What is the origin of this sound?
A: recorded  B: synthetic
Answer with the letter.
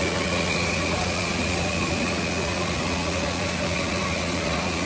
B